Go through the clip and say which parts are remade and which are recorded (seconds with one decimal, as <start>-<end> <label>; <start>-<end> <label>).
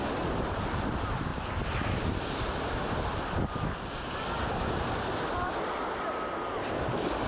0.0-7.3 recorded